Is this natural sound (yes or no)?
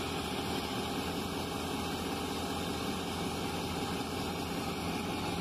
yes